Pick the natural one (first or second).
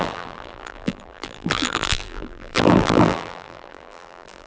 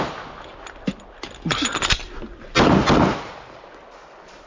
second